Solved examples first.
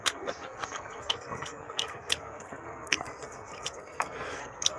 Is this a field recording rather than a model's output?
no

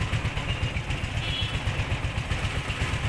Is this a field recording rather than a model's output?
yes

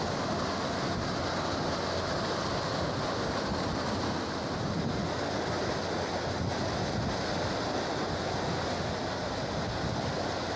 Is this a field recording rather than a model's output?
yes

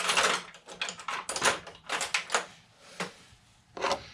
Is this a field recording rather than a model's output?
yes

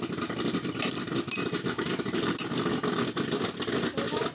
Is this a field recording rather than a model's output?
yes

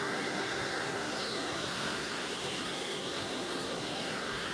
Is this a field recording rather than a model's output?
no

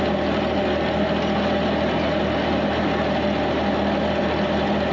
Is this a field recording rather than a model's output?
yes